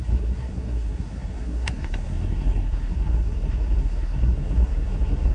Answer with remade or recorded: remade